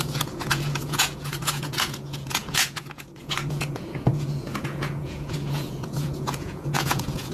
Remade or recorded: remade